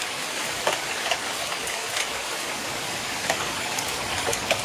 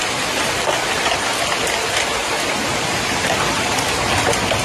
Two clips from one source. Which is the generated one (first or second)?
first